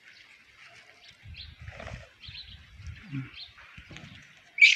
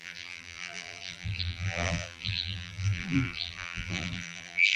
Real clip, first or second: first